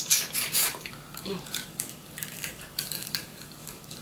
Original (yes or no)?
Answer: no